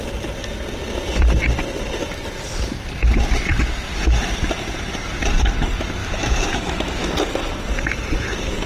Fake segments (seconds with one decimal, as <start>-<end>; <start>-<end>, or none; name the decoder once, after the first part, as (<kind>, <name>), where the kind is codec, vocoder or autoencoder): 6.0-7.1 (autoencoder, DAC-VAE)